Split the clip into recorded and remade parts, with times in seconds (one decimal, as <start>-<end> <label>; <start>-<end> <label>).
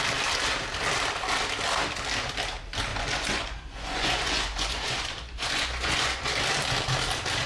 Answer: 0.0-2.9 recorded; 2.9-6.3 remade; 6.3-7.5 recorded